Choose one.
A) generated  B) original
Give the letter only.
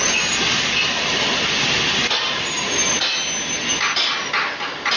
B